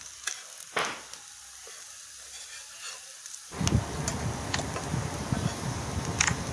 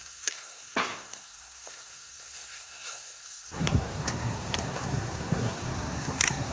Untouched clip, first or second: first